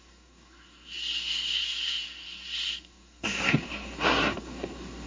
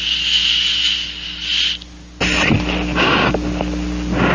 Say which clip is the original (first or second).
second